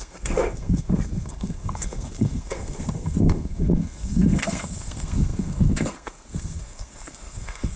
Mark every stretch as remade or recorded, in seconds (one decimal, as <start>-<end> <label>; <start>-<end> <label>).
0.0-7.8 remade